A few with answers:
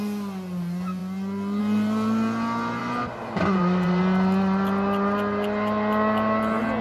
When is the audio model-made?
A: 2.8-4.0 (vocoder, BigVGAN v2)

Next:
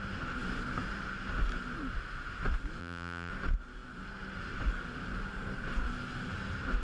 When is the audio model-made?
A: 2.8-3.3 (vocoder, BigVGAN v2)

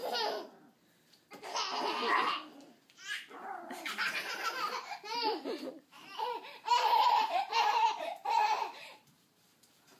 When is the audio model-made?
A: 2.7-10.0 (vocoder, BigVGAN v2)

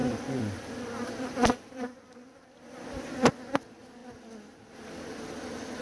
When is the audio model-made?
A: 0.0-3.3 (vocoder, BigVGAN v2)

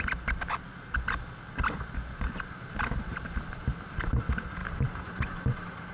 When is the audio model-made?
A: 4.6-5.9 (vocoder, BigVGAN v2)

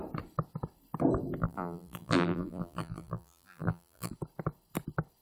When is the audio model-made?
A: 1.4-4.1 (vocoder, BigVGAN v2)

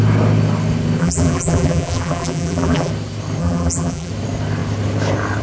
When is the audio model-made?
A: 1.0-2.9 (vocoder, BigVGAN v2); 3.4-4.1

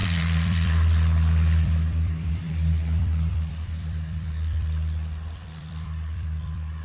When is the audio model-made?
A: 0.0-6.8 (vocoder, BigVGAN v2)